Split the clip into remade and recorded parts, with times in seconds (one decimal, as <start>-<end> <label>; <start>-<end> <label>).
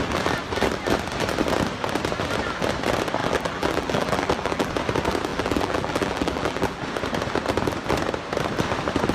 0.0-3.2 recorded; 3.2-4.7 remade; 4.7-5.3 recorded; 5.3-6.8 remade; 6.8-9.1 recorded